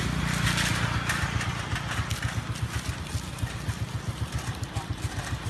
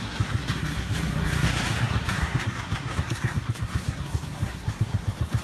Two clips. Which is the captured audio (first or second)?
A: first